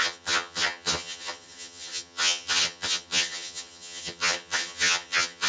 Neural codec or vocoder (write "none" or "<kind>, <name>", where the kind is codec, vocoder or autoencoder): vocoder, HiFi-GAN